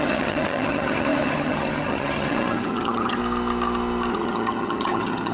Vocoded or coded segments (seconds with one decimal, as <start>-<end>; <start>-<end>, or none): 0.0-3.2; 4.1-5.3